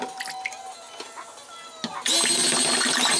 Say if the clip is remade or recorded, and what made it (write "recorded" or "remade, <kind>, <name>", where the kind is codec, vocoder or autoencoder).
recorded